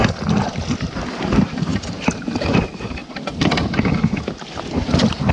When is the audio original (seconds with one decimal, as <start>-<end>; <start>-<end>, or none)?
0.0-5.3